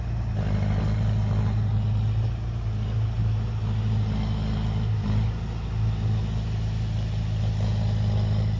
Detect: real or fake real